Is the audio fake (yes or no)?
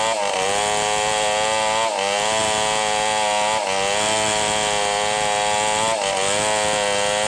no